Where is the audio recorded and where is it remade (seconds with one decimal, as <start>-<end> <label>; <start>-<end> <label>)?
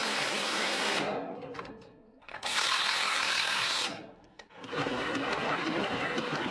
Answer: 0.0-6.5 remade